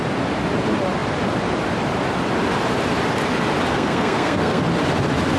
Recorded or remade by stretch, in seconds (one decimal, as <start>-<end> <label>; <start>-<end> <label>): 0.0-3.7 recorded; 3.7-4.6 remade; 4.6-5.4 recorded